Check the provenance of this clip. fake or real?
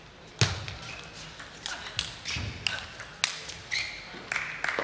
real